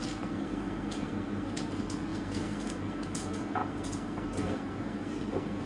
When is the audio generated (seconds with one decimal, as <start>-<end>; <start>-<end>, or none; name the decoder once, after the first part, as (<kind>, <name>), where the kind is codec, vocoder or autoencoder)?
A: 0.0-5.7 (codec, SNAC)